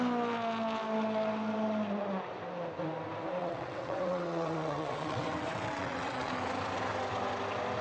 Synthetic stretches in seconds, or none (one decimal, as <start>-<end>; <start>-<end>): 3.4-6.3